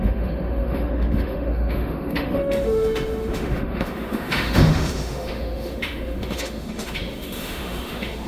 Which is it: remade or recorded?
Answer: remade